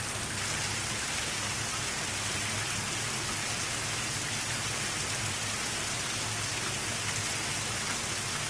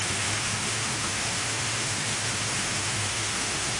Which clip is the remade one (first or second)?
second